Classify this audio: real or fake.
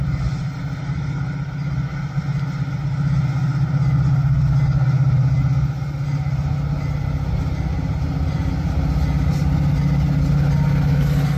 real